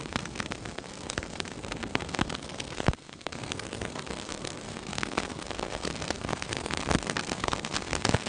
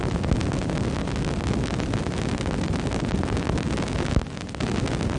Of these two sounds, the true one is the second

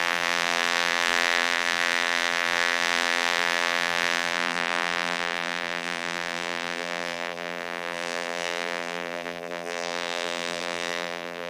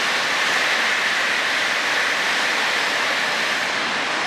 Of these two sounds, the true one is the second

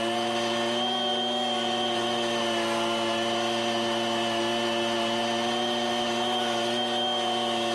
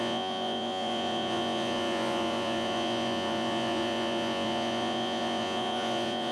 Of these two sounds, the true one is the first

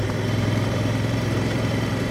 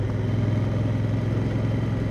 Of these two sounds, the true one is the second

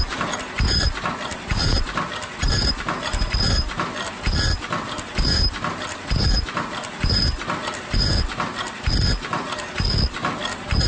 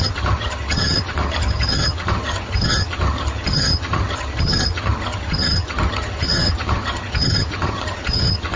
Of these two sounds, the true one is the first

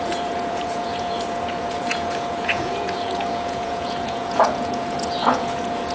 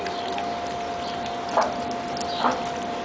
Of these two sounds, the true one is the second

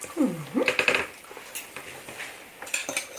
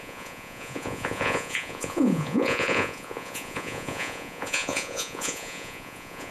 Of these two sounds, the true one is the first